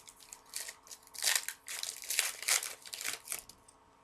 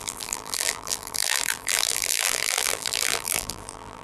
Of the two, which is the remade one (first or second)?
second